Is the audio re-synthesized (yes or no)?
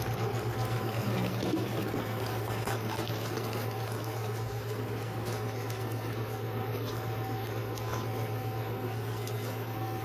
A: yes